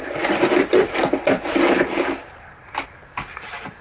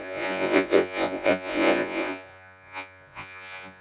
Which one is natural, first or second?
first